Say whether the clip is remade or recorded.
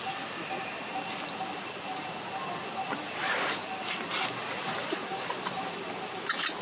recorded